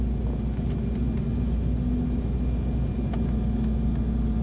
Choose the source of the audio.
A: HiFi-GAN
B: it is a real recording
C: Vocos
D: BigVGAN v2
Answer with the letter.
B